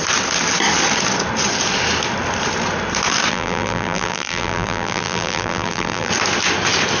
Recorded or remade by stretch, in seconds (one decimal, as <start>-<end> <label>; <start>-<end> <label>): 0.0-3.3 recorded; 3.3-6.1 remade; 6.1-7.0 recorded